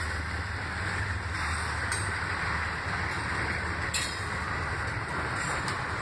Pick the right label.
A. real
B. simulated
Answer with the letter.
A